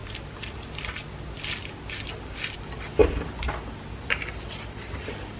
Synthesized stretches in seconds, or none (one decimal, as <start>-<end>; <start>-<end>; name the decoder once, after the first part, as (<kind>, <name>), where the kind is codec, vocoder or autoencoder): none